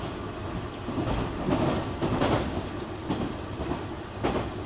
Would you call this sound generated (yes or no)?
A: no